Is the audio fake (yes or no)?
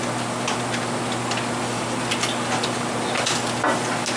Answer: no